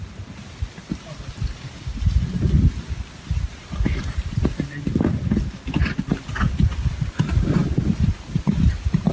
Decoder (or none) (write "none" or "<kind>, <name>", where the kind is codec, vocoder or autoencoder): none